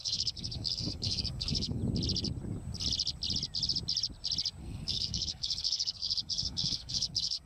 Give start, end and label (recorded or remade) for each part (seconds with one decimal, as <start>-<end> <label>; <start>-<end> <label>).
0.0-1.8 remade; 1.8-4.6 recorded; 4.6-7.5 remade